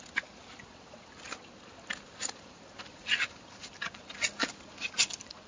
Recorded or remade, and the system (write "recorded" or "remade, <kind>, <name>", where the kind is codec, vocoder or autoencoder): recorded